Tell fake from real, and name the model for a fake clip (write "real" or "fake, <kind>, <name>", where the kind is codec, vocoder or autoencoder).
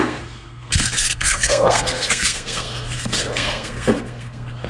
fake, codec, SNAC